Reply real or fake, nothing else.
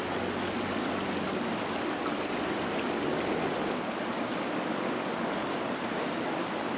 real